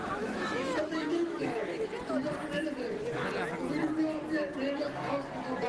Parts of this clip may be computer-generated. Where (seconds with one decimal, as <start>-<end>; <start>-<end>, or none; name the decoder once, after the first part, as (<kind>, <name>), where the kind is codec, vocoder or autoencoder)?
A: 0.0-1.9 (autoencoder, DAC-VAE)